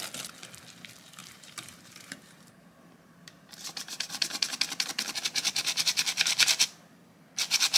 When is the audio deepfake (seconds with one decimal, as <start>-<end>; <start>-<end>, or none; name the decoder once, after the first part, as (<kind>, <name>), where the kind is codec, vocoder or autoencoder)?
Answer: 1.2-5.9 (vocoder, BigVGAN v2)